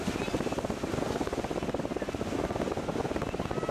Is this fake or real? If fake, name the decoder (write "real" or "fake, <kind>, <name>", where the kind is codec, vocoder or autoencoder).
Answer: real